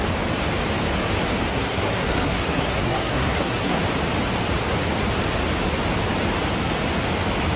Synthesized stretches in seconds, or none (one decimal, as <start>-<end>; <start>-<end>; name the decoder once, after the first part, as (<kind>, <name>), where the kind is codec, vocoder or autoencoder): 1.5-3.8 (codec, SNAC)